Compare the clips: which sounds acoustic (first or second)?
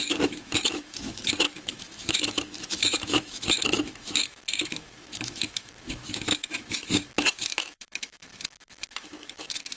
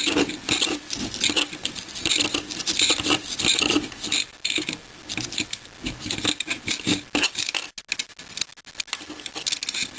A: second